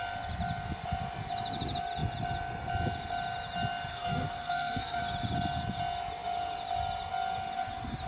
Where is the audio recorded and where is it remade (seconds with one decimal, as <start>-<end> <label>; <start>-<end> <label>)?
0.0-3.9 recorded; 3.9-5.0 remade; 5.0-8.1 recorded